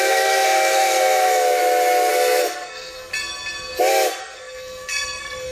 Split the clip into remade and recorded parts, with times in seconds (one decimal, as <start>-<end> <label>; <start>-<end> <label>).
0.0-1.6 remade; 1.6-2.1 recorded; 2.1-3.1 remade; 3.1-4.2 recorded; 4.2-5.5 remade

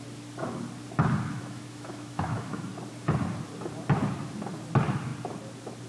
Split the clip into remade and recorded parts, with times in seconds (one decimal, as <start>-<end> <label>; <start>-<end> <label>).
0.0-1.3 recorded; 1.3-2.7 remade; 2.7-5.9 recorded

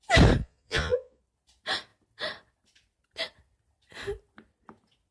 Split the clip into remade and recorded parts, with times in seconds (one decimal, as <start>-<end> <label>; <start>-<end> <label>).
0.0-0.4 recorded; 0.4-1.2 remade; 1.2-5.1 recorded

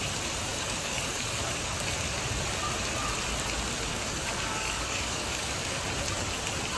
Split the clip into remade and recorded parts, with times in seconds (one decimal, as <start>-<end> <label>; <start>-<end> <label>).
0.0-0.5 recorded; 0.5-1.4 remade; 1.4-3.9 recorded; 3.9-5.8 remade; 5.8-6.8 recorded

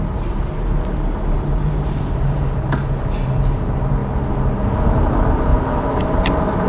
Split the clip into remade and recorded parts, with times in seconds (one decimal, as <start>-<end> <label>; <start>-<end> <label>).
0.0-4.0 remade; 4.0-4.9 recorded; 4.9-5.5 remade; 5.5-6.0 recorded; 6.0-6.7 remade

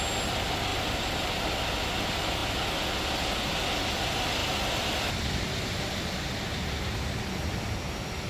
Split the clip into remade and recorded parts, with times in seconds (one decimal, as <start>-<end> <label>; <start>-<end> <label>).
0.0-0.7 recorded; 0.7-1.3 remade; 1.3-8.3 recorded

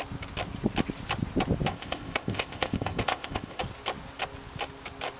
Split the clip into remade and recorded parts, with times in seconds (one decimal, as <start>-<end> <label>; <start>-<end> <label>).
0.0-1.7 recorded; 1.7-3.6 remade; 3.6-5.2 recorded